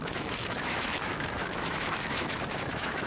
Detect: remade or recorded remade